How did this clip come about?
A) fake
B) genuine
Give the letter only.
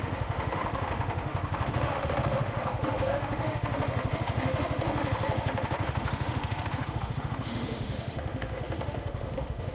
A